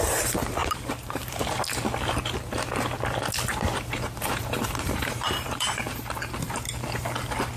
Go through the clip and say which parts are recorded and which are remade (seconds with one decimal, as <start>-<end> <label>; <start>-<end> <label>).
0.0-0.6 recorded; 0.6-1.5 remade; 1.5-3.5 recorded; 3.5-6.0 remade; 6.0-7.6 recorded